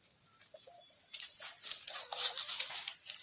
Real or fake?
real